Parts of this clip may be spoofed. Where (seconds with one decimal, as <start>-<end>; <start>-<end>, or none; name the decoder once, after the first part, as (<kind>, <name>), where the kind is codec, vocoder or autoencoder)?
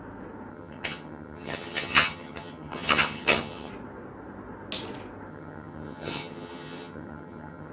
0.5-3.7 (vocoder, HiFi-GAN); 5.3-7.7